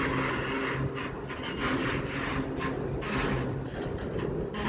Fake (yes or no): no